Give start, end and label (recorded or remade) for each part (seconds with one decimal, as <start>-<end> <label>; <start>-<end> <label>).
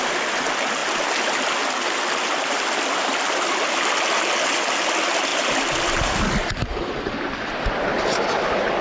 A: 0.0-8.8 recorded